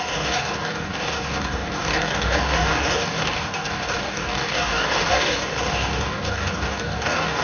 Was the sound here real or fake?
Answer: fake